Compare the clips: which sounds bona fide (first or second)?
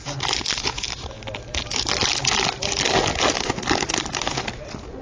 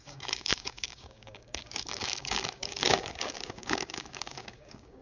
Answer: first